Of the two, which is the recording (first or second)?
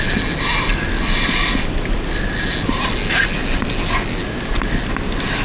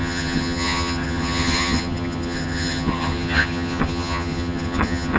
first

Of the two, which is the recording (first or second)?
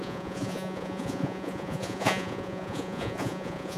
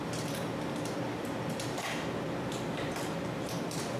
second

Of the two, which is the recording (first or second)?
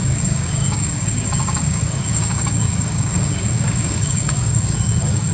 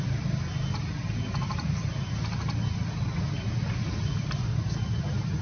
second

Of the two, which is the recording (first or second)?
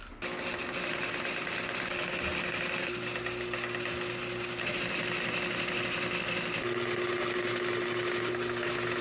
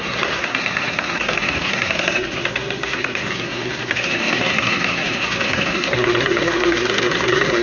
first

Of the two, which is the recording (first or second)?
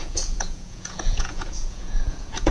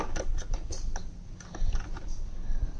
second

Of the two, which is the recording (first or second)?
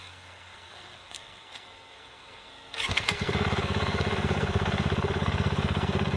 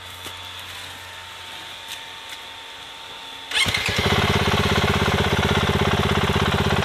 second